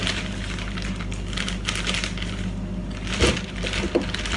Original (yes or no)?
yes